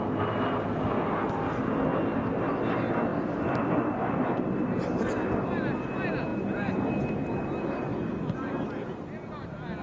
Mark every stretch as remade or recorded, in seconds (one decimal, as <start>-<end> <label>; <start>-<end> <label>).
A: 0.0-3.1 recorded; 3.1-4.2 remade; 4.2-7.9 recorded; 7.9-8.6 remade; 8.6-9.8 recorded

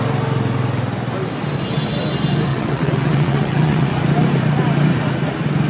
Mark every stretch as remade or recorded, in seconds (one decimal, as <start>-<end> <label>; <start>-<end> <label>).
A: 0.0-2.5 recorded; 2.5-3.9 remade; 3.9-5.7 recorded

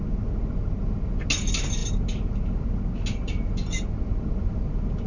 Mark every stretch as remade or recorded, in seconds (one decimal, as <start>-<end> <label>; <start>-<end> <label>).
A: 0.0-5.1 recorded

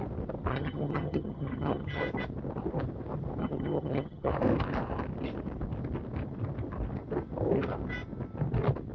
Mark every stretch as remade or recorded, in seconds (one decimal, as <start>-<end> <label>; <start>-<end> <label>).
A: 0.0-0.5 recorded; 0.5-2.0 remade; 2.0-3.4 recorded; 3.4-4.3 remade; 4.3-8.9 recorded

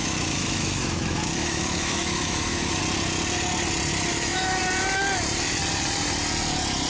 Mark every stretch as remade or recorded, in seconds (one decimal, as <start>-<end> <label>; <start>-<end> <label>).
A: 0.0-2.8 remade; 2.8-4.1 recorded; 4.1-4.6 remade; 4.6-6.9 recorded